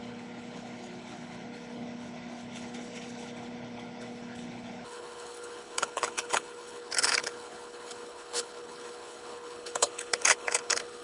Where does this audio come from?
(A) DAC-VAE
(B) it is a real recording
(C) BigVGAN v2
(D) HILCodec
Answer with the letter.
D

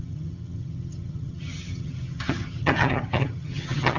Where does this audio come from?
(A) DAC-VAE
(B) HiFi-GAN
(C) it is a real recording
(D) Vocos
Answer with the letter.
B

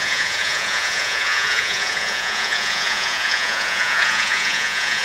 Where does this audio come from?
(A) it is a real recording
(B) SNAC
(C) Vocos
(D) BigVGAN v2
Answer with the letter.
C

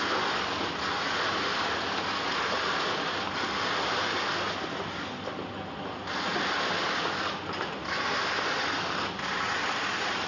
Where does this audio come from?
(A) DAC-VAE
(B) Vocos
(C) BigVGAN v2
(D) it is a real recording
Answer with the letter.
D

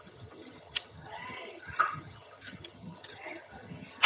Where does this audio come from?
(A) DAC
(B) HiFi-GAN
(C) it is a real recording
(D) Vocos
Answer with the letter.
B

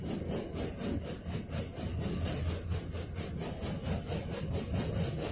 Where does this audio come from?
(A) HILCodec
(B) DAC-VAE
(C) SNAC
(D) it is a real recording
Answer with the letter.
D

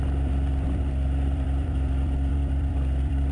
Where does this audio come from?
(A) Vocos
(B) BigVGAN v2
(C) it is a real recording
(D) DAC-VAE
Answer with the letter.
B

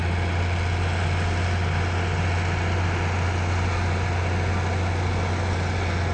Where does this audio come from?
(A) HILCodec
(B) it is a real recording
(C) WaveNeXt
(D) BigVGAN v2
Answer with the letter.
B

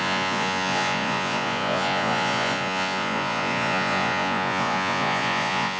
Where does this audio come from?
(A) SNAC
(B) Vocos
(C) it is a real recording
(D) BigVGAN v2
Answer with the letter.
B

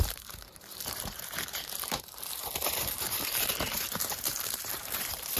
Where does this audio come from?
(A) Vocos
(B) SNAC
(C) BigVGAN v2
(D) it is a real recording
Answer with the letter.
C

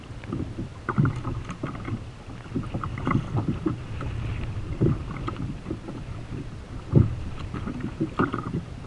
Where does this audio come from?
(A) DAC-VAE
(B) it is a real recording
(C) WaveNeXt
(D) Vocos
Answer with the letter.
B